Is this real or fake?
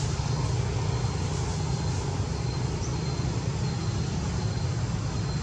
real